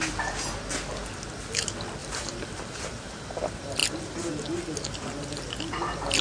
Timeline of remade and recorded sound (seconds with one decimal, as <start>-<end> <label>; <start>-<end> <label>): 0.0-2.0 recorded; 2.0-3.2 remade; 3.2-6.2 recorded